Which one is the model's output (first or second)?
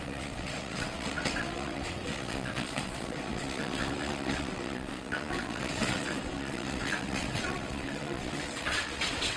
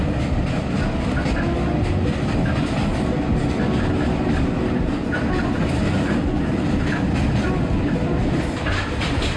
first